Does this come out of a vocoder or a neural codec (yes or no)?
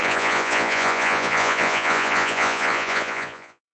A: yes